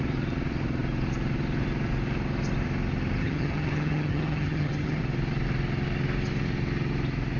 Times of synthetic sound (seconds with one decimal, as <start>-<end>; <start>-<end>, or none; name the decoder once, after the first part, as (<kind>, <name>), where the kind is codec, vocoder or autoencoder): 3.2-5.0 (vocoder, HiFi-GAN)